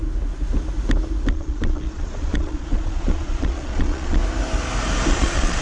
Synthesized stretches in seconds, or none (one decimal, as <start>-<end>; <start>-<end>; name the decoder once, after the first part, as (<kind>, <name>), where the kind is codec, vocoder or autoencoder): 1.3-4.2 (vocoder, Vocos); 5.1-5.6